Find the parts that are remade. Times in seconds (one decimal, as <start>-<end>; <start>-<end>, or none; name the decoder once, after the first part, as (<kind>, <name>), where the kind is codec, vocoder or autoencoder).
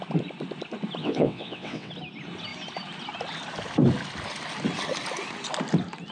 1.0-1.9 (vocoder, WaveNeXt)